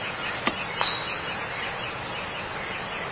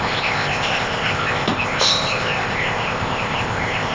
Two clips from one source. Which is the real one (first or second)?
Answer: first